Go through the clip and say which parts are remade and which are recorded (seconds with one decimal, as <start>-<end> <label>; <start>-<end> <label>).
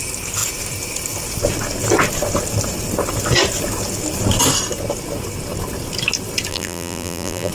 0.0-6.5 recorded; 6.5-7.5 remade